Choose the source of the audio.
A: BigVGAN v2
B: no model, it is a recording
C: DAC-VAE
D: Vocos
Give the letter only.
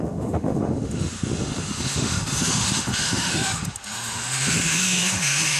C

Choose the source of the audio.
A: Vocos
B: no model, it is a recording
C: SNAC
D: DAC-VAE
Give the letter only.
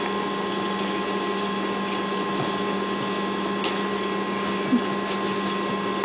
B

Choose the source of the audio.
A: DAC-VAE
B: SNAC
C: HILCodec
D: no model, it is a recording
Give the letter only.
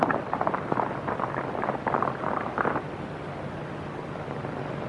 D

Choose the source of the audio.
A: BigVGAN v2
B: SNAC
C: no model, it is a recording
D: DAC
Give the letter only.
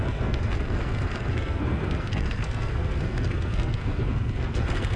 B